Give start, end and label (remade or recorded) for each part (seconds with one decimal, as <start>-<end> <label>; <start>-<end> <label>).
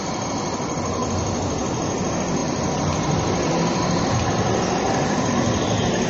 0.0-2.4 recorded; 2.4-5.3 remade; 5.3-6.1 recorded